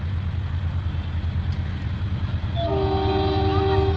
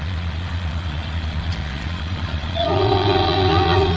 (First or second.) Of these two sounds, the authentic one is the first